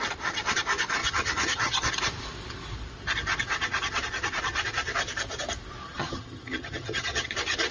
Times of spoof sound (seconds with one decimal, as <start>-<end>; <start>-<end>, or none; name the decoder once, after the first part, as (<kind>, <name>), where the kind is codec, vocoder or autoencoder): 1.0-1.9 (vocoder, HiFi-GAN); 5.8-7.3